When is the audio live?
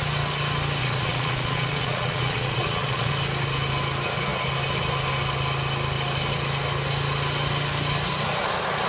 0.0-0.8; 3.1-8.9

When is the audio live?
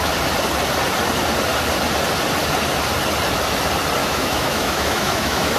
0.0-4.0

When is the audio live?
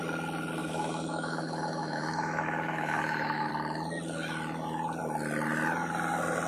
0.0-0.6; 3.5-6.5